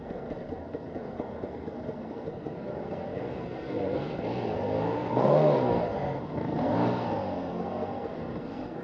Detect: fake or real fake